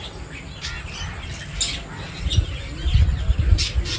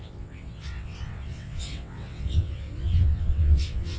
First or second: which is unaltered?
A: first